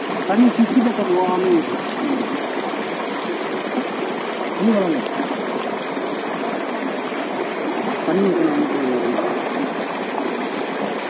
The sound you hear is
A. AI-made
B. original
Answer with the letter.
B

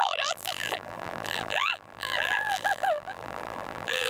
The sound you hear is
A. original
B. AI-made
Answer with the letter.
B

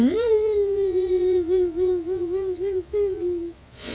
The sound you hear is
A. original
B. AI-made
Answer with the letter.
B